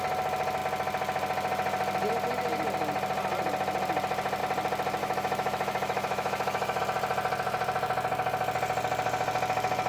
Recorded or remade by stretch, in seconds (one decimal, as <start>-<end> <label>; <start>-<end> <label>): 0.0-5.0 recorded; 5.0-6.8 remade; 6.8-9.9 recorded